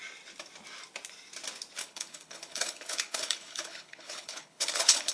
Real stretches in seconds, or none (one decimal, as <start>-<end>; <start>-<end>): 0.0-1.8